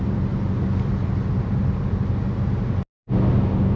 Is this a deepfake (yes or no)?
no